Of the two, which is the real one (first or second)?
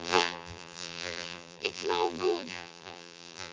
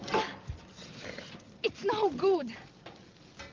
second